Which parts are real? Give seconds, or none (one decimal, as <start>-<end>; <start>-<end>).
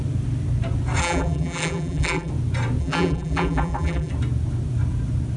0.0-1.0; 2.3-2.8; 4.1-5.4